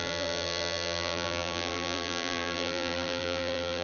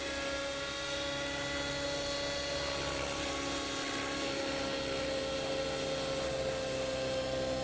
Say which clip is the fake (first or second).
first